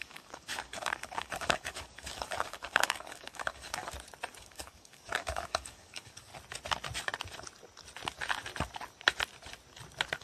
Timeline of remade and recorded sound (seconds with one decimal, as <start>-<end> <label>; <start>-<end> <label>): 0.0-3.8 remade; 3.8-4.4 recorded; 4.4-6.3 remade; 6.3-10.2 recorded